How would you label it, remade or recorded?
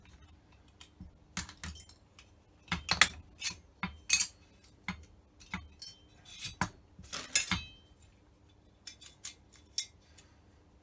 recorded